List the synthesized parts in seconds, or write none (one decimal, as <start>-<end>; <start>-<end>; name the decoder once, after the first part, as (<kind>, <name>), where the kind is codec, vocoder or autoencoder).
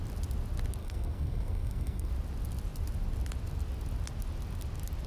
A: 0.8-2.1 (codec, SNAC)